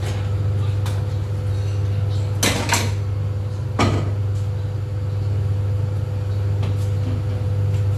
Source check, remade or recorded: recorded